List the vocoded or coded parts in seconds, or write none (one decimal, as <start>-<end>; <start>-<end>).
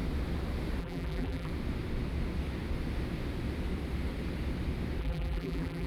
0.8-1.5; 5.0-5.9